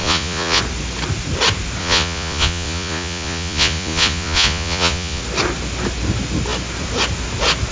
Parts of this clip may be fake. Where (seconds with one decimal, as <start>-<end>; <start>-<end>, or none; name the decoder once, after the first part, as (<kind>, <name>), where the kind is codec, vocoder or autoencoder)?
0.0-0.6 (vocoder, Vocos); 1.8-5.2